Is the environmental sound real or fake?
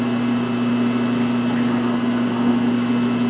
real